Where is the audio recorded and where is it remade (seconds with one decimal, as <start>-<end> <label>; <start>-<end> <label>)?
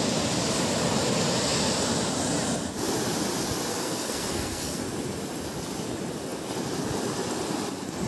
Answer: 0.0-3.7 recorded; 3.7-4.8 remade; 4.8-8.1 recorded